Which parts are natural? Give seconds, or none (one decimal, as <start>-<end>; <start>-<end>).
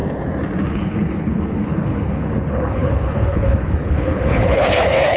0.0-0.7